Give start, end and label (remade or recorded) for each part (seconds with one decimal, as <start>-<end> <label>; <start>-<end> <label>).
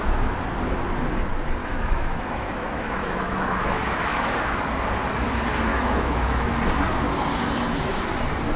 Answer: 0.0-1.6 recorded; 1.6-4.6 remade; 4.6-5.7 recorded; 5.7-6.5 remade; 6.5-8.6 recorded